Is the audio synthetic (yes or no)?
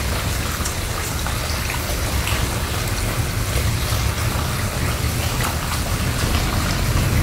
no